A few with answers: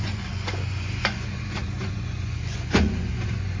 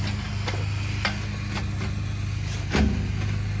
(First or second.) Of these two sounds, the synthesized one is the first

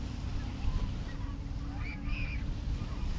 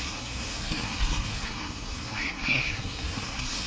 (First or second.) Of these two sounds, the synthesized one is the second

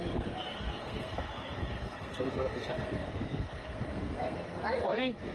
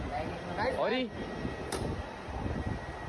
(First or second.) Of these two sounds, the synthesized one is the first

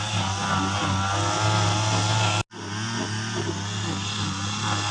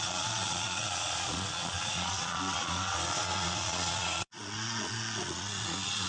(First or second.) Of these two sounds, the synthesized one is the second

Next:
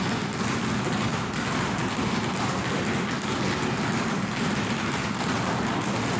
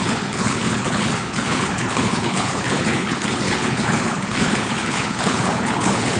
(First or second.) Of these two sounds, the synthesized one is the second